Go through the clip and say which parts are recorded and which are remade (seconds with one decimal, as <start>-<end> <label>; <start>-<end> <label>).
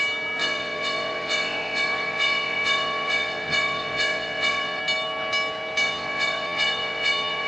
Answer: 0.0-0.4 recorded; 0.4-4.8 remade; 4.8-5.8 recorded; 5.8-7.5 remade